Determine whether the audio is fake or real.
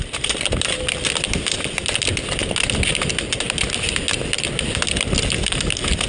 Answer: real